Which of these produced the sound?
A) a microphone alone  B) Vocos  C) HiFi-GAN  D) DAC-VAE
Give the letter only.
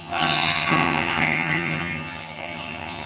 C